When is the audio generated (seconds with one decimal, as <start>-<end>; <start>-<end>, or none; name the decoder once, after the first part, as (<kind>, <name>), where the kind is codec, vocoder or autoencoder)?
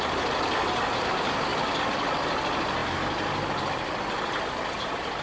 none